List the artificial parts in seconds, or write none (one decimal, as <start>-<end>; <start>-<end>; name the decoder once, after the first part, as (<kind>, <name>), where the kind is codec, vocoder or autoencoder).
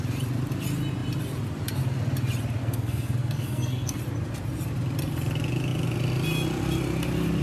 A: 2.6-4.0 (codec, SNAC)